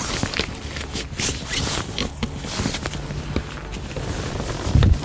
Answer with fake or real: real